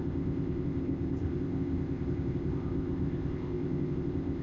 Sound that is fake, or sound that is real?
fake